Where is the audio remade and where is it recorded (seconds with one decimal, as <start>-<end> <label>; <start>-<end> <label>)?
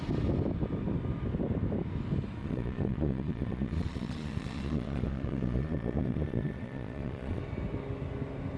0.0-2.4 recorded; 2.4-7.4 remade; 7.4-8.6 recorded